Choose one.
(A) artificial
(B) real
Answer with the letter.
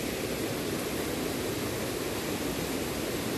B